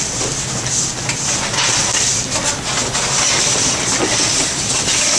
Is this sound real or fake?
real